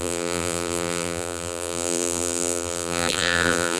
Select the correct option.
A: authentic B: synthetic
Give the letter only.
B